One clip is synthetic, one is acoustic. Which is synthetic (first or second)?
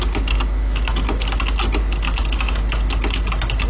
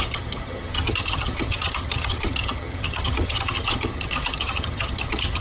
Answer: second